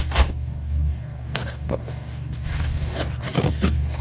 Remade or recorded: remade